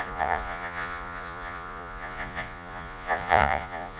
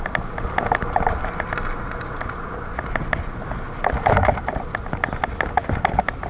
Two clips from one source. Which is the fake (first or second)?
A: first